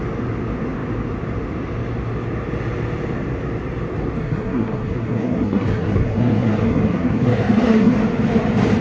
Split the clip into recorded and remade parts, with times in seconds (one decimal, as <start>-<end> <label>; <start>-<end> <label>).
0.0-4.2 recorded; 4.2-8.0 remade; 8.0-8.8 recorded